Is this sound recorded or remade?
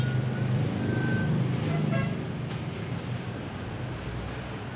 recorded